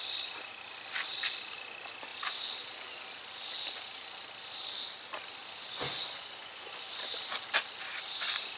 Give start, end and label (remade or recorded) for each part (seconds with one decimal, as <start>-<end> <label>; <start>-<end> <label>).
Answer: 0.0-5.4 recorded; 5.4-7.0 remade; 7.0-8.6 recorded